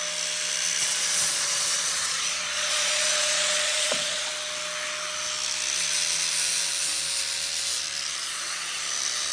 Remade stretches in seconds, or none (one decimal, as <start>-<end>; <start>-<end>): 0.8-4.3; 8.2-8.8